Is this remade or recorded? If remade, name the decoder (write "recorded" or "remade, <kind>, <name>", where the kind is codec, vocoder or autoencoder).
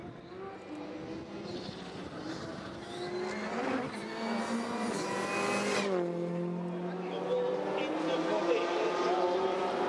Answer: recorded